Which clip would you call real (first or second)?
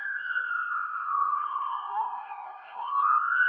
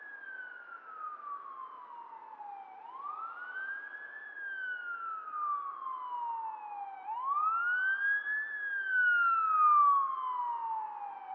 second